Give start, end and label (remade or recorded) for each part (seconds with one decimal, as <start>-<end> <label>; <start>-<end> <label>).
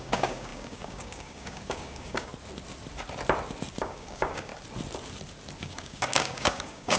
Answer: 0.0-2.3 remade; 2.3-3.8 recorded; 3.8-4.5 remade; 4.5-5.6 recorded; 5.6-7.0 remade